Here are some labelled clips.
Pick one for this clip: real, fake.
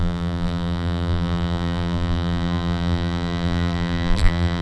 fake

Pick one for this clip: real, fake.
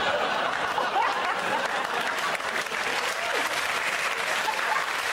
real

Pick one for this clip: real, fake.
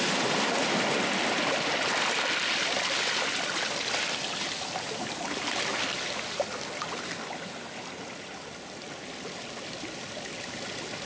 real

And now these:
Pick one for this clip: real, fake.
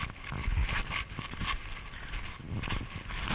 real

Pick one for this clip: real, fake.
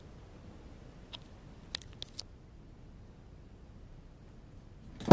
real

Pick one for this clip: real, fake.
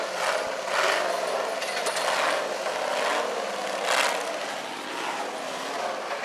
real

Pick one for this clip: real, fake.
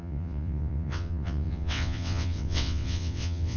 fake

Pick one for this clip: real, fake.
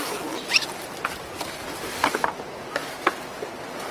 real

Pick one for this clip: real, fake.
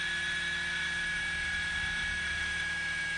fake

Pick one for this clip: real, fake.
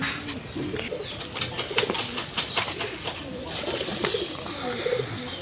real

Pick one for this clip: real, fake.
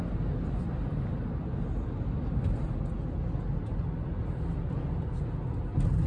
real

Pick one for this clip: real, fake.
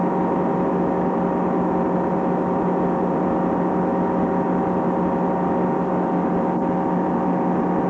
real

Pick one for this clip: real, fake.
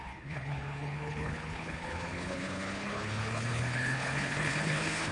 fake